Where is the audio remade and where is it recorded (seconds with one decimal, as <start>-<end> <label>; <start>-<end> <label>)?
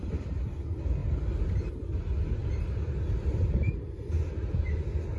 0.0-5.2 recorded